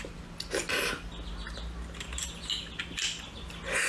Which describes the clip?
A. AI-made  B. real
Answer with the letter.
B